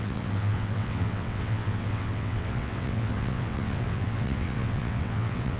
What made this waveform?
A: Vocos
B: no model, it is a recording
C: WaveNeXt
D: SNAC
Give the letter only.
C